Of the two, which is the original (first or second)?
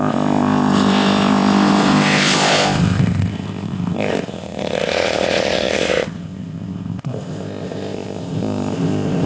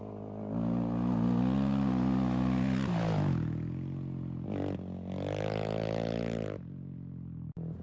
second